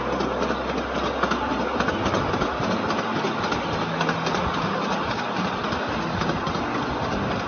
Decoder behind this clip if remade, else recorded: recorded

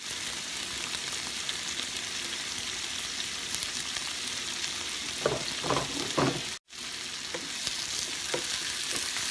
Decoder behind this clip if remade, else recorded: recorded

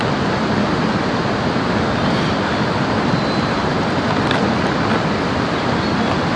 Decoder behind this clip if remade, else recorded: recorded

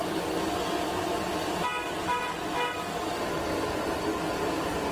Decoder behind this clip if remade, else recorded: recorded